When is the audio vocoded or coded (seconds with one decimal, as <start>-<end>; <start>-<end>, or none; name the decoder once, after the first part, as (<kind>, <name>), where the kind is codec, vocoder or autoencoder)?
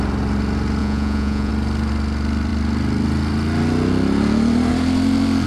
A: 0.8-1.5 (vocoder, Vocos)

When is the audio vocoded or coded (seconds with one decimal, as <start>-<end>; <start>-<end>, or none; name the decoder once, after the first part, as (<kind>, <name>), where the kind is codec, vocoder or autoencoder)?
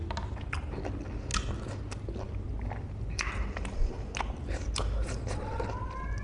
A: none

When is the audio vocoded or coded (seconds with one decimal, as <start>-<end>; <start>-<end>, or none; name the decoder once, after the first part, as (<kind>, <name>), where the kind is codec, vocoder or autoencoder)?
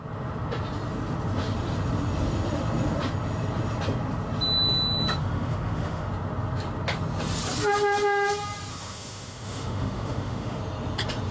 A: 5.2-6.1 (autoencoder, DAC-VAE); 8.7-10.6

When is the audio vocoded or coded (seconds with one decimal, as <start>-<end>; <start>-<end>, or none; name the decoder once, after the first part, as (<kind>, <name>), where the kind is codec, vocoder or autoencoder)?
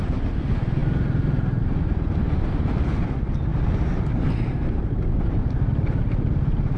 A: none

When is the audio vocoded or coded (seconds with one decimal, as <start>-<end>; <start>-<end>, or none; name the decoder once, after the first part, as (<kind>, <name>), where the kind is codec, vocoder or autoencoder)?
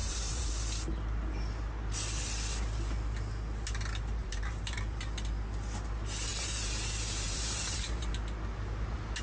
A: 0.0-0.5 (vocoder, BigVGAN v2); 4.2-5.0; 6.3-8.1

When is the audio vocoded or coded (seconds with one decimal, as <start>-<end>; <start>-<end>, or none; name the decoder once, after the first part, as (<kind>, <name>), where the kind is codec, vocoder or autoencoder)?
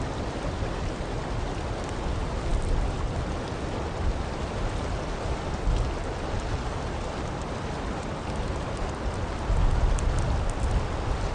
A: none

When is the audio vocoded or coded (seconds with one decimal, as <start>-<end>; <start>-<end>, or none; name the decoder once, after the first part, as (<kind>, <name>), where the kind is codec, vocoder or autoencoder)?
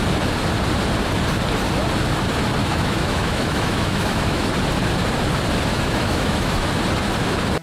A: 2.6-4.5 (autoencoder, DAC-VAE); 5.7-6.7